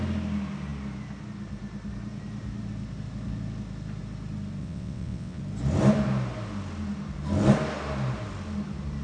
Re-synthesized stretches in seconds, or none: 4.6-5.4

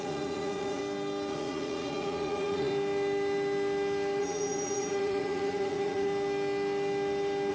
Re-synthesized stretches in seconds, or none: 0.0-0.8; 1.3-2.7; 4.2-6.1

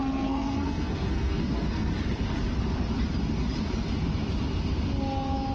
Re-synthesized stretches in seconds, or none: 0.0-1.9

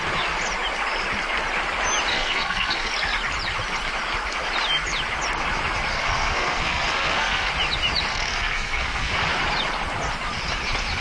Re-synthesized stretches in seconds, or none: 2.1-2.9; 5.9-7.5; 8.1-9.1

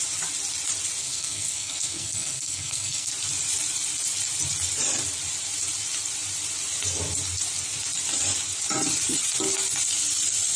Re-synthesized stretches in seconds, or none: 1.0-3.1

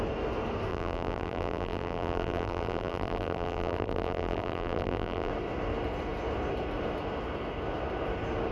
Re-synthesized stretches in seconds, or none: 0.7-5.3